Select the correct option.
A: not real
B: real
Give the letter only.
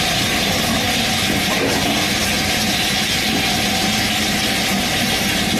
B